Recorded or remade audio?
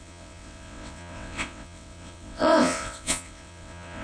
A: remade